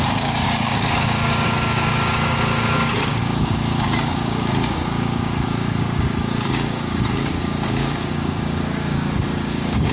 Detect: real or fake fake